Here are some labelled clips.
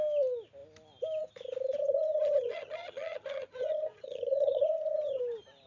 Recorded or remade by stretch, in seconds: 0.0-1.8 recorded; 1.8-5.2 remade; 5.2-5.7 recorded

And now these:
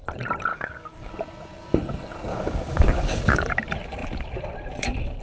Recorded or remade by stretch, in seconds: 0.0-0.5 recorded; 0.5-1.1 remade; 1.1-2.3 recorded; 2.3-3.3 remade; 3.3-5.2 recorded

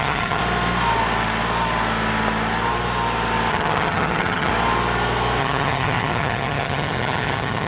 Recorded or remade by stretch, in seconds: 0.0-0.4 remade; 0.4-3.5 recorded; 3.5-4.5 remade; 4.5-5.4 recorded; 5.4-7.7 remade

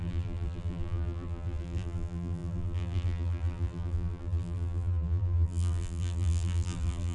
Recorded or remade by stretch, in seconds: 0.0-7.1 remade

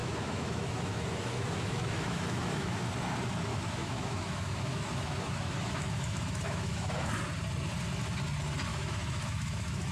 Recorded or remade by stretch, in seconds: 0.0-2.8 remade; 2.8-3.5 recorded; 3.5-7.1 remade; 7.1-8.7 recorded; 8.7-9.9 remade

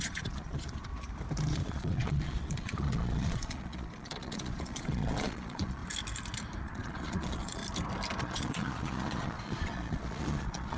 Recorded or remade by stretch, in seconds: 0.0-0.9 remade; 0.9-1.5 recorded; 1.5-5.8 remade; 5.8-6.6 recorded; 6.6-7.6 remade; 7.6-8.2 recorded; 8.2-10.8 remade

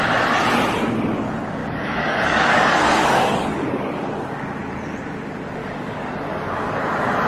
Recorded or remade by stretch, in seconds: 0.0-1.6 recorded; 1.6-4.4 remade; 4.4-5.6 recorded; 5.6-6.8 remade; 6.8-7.3 recorded